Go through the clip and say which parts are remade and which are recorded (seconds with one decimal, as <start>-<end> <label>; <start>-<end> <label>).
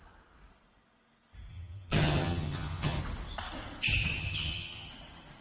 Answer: 0.0-1.5 recorded; 1.5-3.0 remade; 3.0-4.2 recorded; 4.2-4.9 remade; 4.9-5.4 recorded